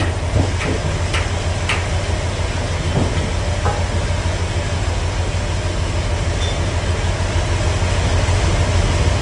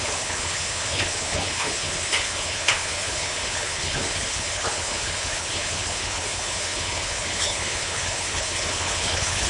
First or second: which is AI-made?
second